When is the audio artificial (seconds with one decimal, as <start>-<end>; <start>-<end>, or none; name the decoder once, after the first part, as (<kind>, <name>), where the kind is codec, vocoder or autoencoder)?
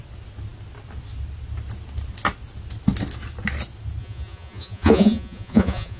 4.0-6.0 (vocoder, Vocos)